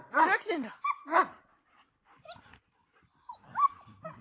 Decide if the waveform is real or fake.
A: real